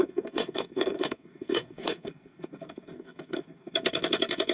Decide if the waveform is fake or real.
fake